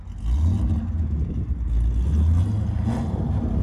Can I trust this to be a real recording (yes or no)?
yes